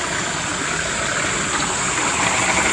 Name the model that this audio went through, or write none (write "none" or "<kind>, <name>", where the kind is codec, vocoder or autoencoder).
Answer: none